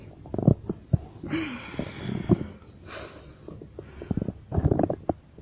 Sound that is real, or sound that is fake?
real